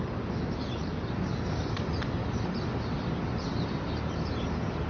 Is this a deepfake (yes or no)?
no